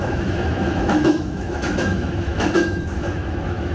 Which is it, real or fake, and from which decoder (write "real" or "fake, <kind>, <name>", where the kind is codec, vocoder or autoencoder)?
fake, autoencoder, DAC-VAE